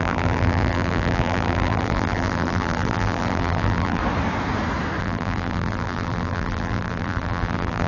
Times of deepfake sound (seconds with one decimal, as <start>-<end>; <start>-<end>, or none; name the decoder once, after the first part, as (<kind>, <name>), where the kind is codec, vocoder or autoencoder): 0.0-4.0 (vocoder, BigVGAN v2); 5.0-7.9